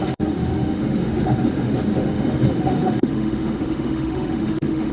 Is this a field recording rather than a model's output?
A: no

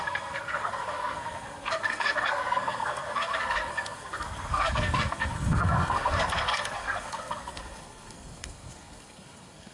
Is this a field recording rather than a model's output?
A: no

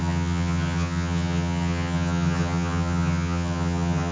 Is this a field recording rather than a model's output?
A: no